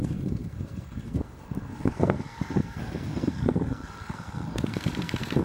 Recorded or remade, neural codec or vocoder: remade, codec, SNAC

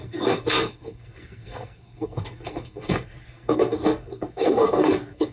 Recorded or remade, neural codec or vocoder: remade, codec, SNAC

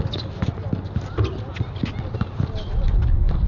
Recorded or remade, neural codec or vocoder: recorded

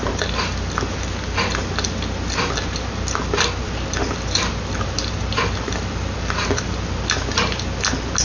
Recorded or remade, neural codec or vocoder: recorded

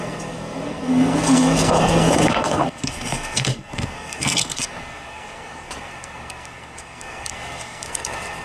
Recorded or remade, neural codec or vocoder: remade, codec, SNAC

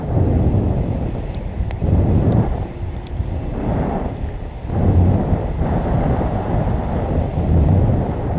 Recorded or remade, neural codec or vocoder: recorded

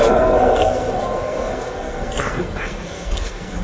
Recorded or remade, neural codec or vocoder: remade, codec, SNAC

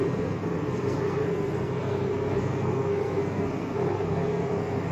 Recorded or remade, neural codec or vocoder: remade, codec, SNAC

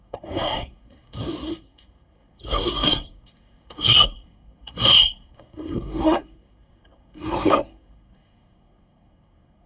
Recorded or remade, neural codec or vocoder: remade, codec, SNAC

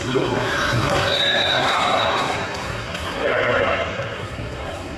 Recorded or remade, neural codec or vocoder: remade, codec, SNAC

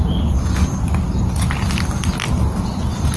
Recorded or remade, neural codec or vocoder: recorded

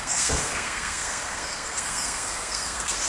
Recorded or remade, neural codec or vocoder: remade, codec, SNAC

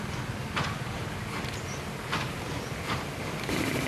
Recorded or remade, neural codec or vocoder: recorded